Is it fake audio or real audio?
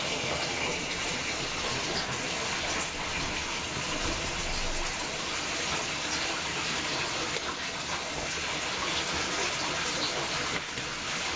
real